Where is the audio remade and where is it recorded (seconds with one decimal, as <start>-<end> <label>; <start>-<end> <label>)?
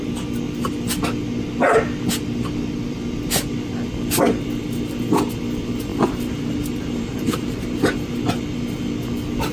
0.0-5.9 recorded; 5.9-8.2 remade; 8.2-9.5 recorded